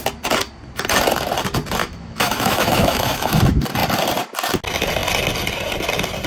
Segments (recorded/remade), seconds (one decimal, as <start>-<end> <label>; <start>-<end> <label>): 0.0-1.8 recorded; 1.8-3.4 remade; 3.4-6.3 recorded